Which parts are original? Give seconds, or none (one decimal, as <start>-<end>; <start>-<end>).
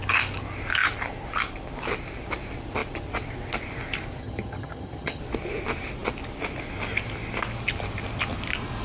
0.0-4.2; 5.2-8.8